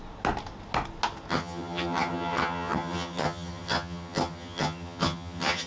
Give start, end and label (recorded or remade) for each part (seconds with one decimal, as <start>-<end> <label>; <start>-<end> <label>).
0.0-1.3 recorded; 1.3-5.7 remade